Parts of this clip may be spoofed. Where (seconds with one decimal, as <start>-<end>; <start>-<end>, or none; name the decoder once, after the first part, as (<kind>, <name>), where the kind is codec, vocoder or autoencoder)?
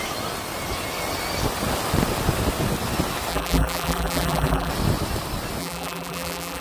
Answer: 3.3-4.7 (vocoder, BigVGAN v2); 5.6-6.6